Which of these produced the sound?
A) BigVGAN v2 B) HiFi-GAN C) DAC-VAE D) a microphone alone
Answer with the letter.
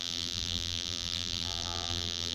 A